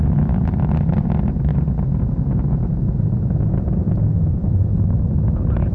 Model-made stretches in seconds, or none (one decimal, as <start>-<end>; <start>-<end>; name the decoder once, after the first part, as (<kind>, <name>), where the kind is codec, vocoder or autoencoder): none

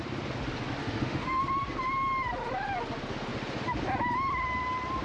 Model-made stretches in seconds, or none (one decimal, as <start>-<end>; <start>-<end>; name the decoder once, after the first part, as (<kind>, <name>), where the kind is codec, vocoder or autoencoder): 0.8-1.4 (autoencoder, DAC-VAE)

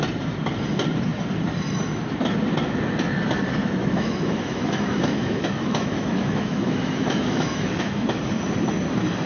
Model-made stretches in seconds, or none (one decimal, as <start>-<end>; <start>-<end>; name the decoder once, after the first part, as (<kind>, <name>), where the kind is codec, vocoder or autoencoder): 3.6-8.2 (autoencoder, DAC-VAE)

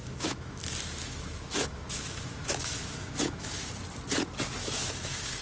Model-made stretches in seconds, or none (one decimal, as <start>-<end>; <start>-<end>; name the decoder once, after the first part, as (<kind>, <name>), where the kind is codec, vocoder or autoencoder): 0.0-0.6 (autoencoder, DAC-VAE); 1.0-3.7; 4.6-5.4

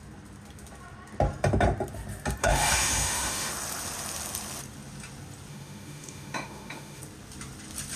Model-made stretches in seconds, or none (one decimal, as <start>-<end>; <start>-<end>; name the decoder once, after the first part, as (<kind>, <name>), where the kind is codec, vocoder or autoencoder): 2.4-3.5 (autoencoder, DAC-VAE); 5.5-7.0

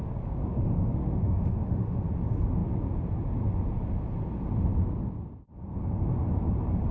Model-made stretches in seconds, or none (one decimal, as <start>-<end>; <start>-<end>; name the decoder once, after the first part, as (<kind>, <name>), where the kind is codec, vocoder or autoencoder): 0.4-2.0 (autoencoder, DAC-VAE)

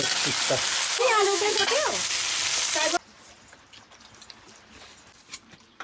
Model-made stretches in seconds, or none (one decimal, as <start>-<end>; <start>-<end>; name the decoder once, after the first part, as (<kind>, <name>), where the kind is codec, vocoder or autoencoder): 0.9-1.5 (autoencoder, DAC-VAE)